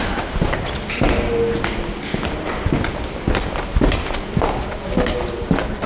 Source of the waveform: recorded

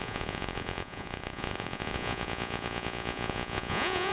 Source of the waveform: remade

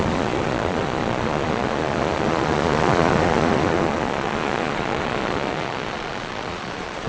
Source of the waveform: remade